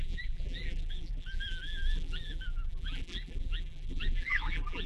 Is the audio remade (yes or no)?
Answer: yes